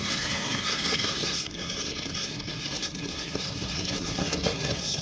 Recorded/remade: remade